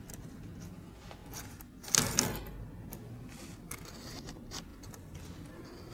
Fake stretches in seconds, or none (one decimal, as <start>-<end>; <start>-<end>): 4.7-5.9